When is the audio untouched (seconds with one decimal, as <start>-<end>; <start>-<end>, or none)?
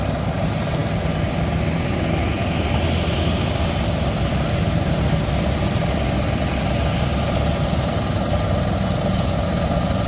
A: 0.0-10.1